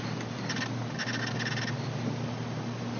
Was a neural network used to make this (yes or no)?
no